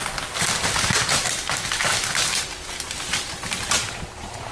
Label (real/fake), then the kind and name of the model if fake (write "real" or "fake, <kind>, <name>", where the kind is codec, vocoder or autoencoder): real